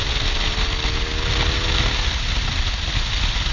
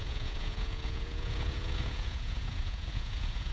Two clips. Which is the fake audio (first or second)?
second